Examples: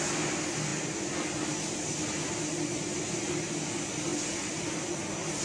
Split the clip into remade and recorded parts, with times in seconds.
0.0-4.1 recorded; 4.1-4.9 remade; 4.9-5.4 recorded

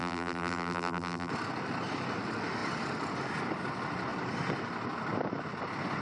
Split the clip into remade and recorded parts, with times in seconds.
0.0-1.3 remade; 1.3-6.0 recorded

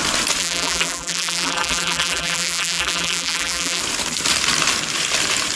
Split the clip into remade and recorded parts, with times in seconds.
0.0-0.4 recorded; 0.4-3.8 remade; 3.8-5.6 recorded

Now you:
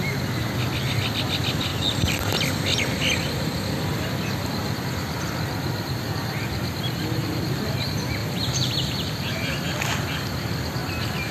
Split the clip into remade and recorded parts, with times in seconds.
0.0-8.2 recorded; 8.2-8.7 remade; 8.7-11.3 recorded

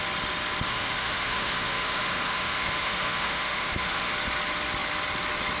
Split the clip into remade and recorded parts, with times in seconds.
0.0-0.7 recorded; 0.7-4.1 remade; 4.1-5.6 recorded

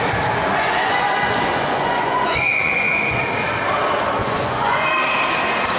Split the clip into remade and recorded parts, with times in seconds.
0.0-0.4 recorded; 0.4-3.2 remade; 3.2-4.2 recorded; 4.2-4.9 remade; 4.9-5.8 recorded

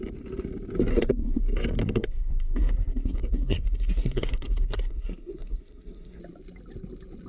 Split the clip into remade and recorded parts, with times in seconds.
0.0-0.9 recorded; 0.9-1.4 remade; 1.4-1.8 recorded; 1.8-6.2 remade; 6.2-7.3 recorded

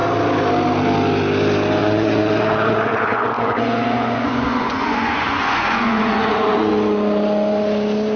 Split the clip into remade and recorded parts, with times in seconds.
0.0-1.8 recorded; 1.8-6.7 remade; 6.7-8.2 recorded